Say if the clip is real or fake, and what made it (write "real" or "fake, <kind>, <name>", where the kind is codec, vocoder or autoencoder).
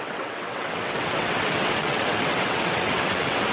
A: fake, vocoder, WaveNeXt